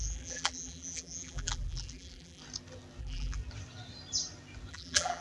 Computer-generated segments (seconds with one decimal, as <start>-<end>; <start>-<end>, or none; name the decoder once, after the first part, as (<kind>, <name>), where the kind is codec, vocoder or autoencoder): 0.0-2.4 (vocoder, BigVGAN v2); 3.0-3.4; 4.7-5.2